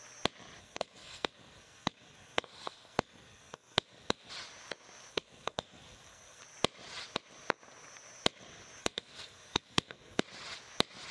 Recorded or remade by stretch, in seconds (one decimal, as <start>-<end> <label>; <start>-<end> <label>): 0.0-0.6 recorded; 0.6-4.3 remade; 4.3-5.1 recorded; 5.1-6.4 remade; 6.4-8.8 recorded; 8.8-10.2 remade; 10.2-11.1 recorded